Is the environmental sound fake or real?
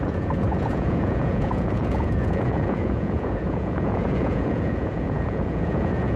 fake